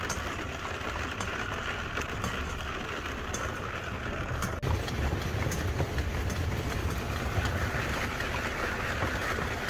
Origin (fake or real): real